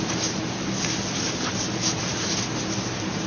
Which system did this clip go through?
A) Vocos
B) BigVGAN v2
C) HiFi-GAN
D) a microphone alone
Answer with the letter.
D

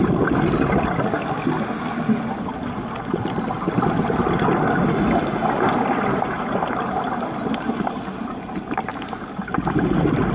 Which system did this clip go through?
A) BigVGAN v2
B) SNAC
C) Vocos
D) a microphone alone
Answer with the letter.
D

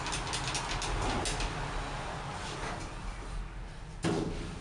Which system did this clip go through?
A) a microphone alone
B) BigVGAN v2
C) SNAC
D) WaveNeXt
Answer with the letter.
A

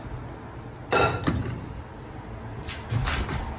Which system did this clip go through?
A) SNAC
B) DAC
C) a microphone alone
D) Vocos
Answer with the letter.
C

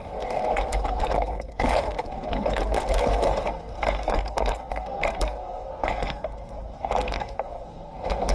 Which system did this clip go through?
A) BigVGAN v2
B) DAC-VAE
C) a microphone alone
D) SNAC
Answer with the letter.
D